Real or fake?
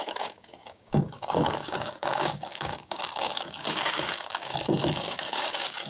fake